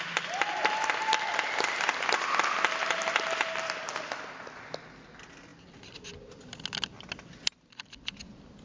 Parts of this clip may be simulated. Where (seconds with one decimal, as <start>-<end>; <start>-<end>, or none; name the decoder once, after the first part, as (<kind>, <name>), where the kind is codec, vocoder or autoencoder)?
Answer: none